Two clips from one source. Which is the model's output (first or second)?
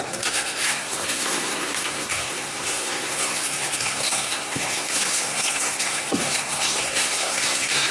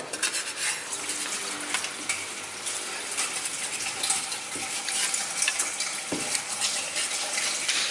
first